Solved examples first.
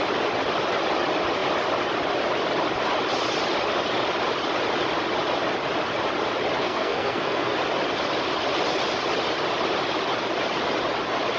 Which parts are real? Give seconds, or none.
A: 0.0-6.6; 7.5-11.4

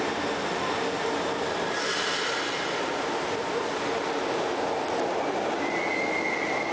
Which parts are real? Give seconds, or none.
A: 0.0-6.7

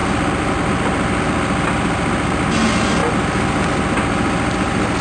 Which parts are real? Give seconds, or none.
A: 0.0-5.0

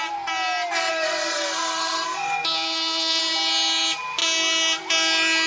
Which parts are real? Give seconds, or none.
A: 0.0-0.9; 3.2-5.5